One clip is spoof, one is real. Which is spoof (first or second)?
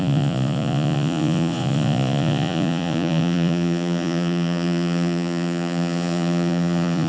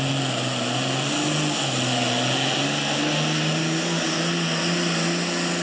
first